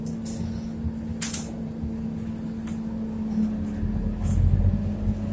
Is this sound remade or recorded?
recorded